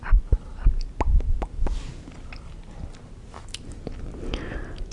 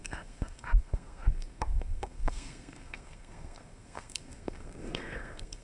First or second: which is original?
first